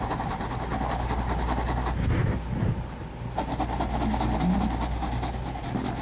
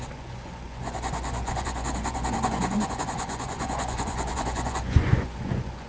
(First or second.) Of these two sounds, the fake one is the second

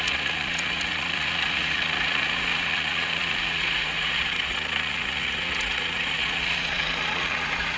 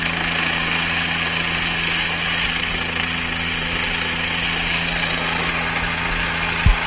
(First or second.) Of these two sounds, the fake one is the first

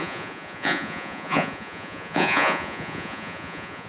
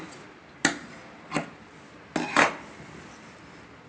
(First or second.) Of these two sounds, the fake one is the first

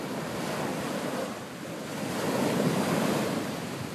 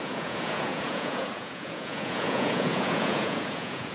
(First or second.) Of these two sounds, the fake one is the second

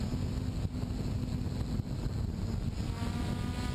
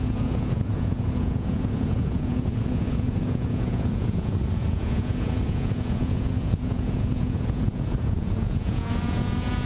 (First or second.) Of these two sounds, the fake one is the second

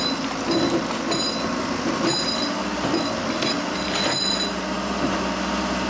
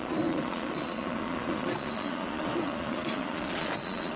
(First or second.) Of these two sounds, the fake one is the second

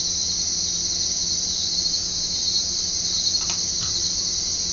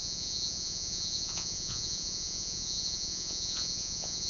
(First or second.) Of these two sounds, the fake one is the second